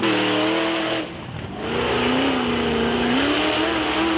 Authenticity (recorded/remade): recorded